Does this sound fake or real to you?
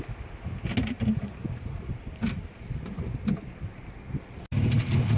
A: real